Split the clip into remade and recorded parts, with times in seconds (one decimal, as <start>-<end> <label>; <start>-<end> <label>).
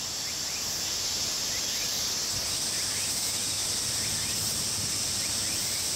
0.0-6.0 recorded